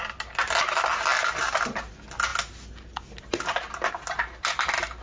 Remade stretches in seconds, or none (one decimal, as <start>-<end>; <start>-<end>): none